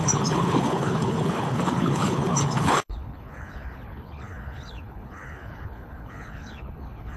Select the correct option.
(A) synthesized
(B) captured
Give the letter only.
A